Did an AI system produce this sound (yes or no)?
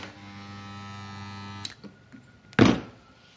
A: no